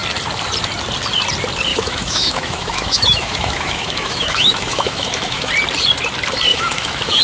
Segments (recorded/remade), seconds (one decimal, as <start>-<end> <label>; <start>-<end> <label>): 0.0-1.7 recorded; 1.7-5.5 remade; 5.5-6.5 recorded; 6.5-7.2 remade